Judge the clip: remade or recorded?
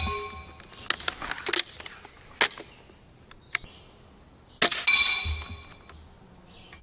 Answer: recorded